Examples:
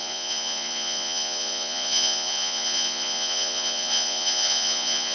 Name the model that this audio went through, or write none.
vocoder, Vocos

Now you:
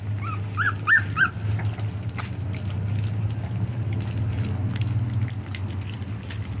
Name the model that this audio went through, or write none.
none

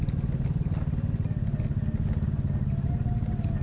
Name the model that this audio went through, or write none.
none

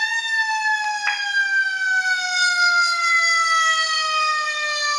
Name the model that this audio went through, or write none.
none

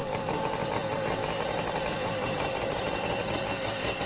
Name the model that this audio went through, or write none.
none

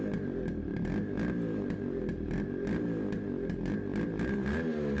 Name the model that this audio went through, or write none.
none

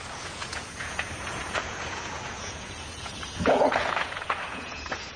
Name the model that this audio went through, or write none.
vocoder, Vocos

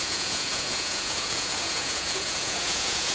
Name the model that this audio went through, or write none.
vocoder, Vocos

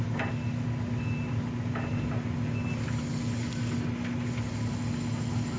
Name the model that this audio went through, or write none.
none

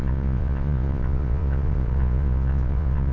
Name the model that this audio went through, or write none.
vocoder, Vocos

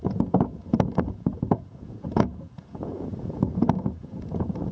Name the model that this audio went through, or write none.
vocoder, Vocos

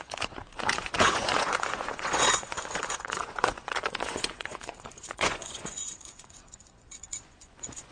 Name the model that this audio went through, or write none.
vocoder, Vocos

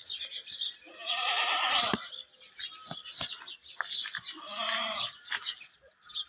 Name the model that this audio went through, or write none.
none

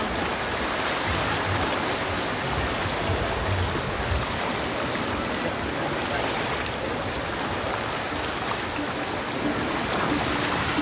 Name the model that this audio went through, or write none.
none